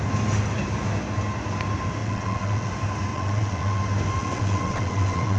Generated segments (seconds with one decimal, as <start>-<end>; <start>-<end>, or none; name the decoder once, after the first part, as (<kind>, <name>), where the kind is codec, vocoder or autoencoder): 2.0-2.7 (vocoder, WaveNeXt); 3.1-3.8; 4.2-5.4

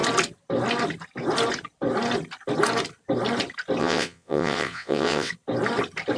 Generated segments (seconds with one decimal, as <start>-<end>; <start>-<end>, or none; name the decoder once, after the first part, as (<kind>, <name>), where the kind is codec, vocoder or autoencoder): 3.8-5.3 (vocoder, WaveNeXt)

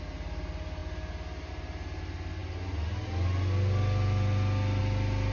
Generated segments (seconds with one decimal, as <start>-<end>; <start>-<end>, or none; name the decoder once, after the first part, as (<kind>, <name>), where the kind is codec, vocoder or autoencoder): none